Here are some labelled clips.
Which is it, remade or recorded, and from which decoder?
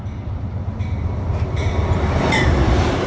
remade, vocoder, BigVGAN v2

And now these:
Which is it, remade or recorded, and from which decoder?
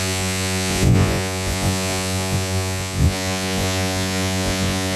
remade, vocoder, Vocos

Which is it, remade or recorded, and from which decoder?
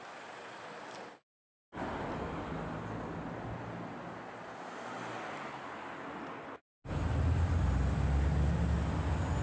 recorded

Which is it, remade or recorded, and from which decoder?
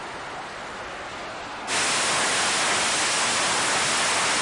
recorded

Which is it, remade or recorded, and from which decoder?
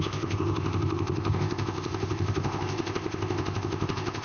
remade, codec, ZipCodec